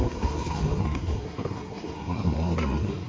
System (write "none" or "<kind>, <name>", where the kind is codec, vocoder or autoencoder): codec, SNAC